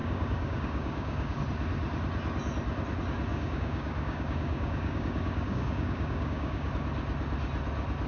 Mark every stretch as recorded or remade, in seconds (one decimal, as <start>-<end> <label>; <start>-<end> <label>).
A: 0.0-1.4 remade; 1.4-3.3 recorded; 3.3-6.7 remade; 6.7-8.1 recorded